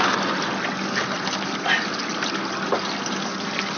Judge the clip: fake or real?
real